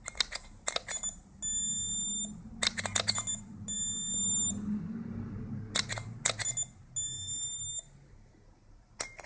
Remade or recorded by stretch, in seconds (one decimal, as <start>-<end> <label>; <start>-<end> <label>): 0.0-9.3 recorded